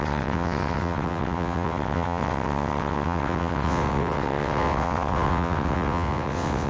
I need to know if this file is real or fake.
fake